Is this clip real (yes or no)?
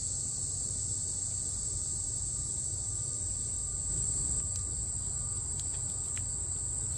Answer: yes